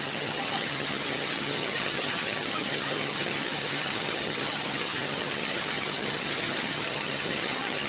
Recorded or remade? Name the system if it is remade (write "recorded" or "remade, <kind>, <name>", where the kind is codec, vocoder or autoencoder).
remade, vocoder, HiFi-GAN